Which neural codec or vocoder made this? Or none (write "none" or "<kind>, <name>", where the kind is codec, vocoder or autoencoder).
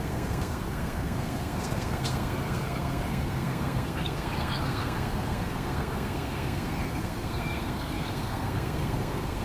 codec, SNAC